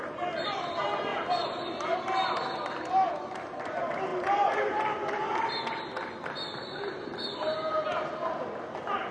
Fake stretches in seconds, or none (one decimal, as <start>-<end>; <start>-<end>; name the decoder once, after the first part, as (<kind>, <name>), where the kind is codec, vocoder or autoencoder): none